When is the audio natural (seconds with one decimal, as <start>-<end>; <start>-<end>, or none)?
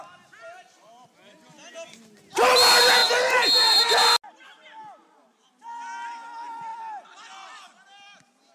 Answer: 0.0-8.5